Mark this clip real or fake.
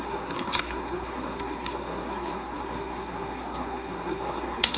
fake